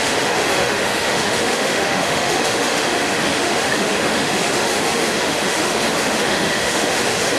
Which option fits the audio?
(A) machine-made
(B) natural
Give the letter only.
A